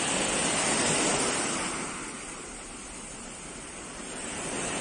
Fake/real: real